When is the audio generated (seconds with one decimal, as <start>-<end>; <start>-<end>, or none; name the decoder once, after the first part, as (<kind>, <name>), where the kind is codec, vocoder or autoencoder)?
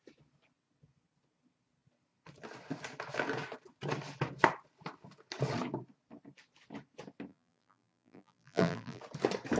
7.3-9.0 (vocoder, BigVGAN v2)